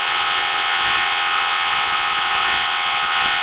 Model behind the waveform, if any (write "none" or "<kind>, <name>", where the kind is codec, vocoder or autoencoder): vocoder, WaveNeXt